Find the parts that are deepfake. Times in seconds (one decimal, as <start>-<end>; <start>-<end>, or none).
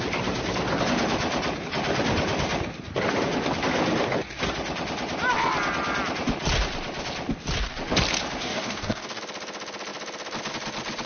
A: 8.4-9.2